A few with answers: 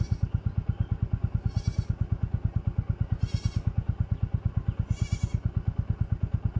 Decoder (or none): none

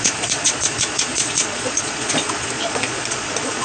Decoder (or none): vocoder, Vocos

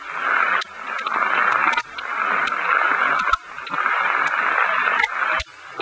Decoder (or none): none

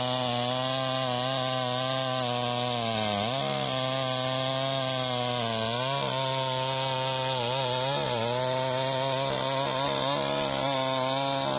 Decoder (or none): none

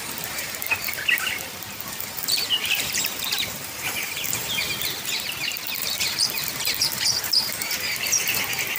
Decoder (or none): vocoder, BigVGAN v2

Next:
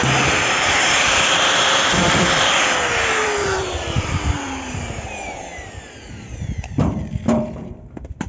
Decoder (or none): vocoder, BigVGAN v2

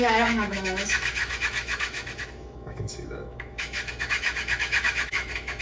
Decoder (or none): autoencoder, DAC-VAE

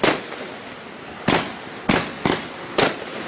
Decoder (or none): none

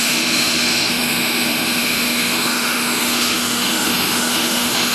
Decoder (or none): autoencoder, DAC-VAE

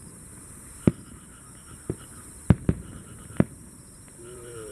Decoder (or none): vocoder, BigVGAN v2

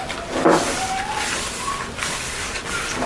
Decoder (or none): vocoder, BigVGAN v2